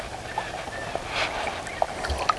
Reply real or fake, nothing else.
real